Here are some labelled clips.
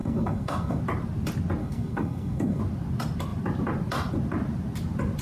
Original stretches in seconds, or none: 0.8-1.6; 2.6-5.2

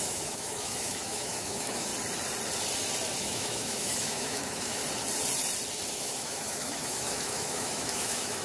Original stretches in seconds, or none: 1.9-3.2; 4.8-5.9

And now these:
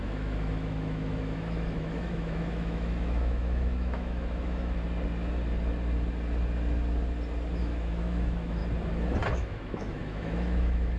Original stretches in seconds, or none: 4.8-7.6; 8.6-9.3

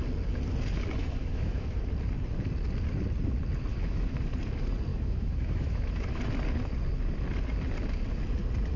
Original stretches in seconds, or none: 0.0-1.0; 1.9-3.7; 4.2-4.9; 6.2-8.8

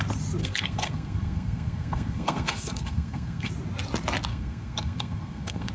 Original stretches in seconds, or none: 0.0-0.4; 3.5-4.3

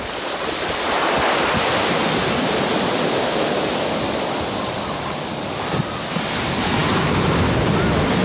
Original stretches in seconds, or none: 0.0-8.2

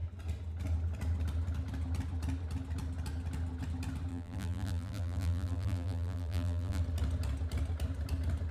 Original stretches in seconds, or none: 0.0-4.1; 6.8-8.5

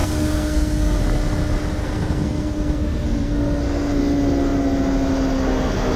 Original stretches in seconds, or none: 1.0-1.8; 4.0-6.0